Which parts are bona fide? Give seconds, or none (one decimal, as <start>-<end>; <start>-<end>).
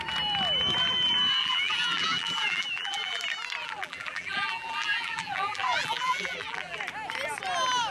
0.0-1.4; 3.2-3.6; 6.8-7.9